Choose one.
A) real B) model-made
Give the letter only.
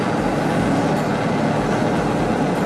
A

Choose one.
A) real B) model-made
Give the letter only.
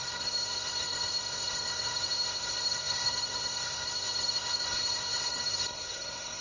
B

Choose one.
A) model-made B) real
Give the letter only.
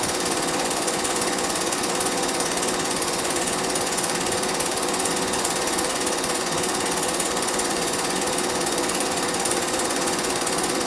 A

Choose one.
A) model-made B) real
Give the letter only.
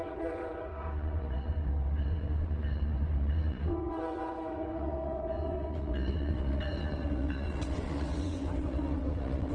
A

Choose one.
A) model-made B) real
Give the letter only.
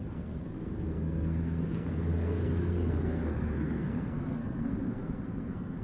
A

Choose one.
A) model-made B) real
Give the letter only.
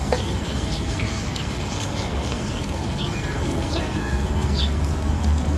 A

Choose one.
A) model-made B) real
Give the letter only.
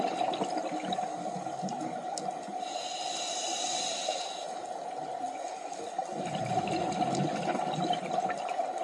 B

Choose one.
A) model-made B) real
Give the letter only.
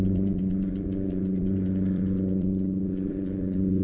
A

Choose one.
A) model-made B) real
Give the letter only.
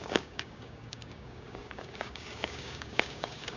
A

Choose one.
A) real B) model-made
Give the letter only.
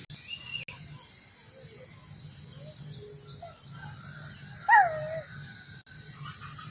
A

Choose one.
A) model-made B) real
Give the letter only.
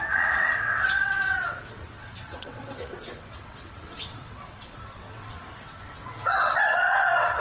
A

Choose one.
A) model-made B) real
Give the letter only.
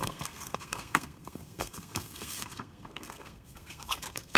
A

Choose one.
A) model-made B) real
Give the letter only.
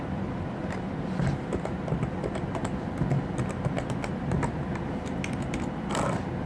B